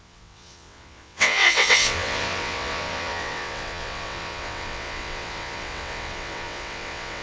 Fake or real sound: fake